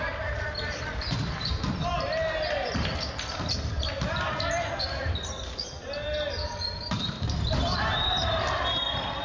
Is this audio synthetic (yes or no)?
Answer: yes